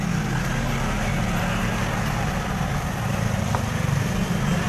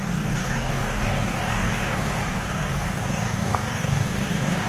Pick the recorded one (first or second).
first